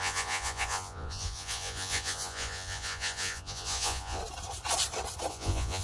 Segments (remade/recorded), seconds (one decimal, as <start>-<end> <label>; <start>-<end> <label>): 0.0-4.2 remade; 4.2-5.3 recorded; 5.3-5.8 remade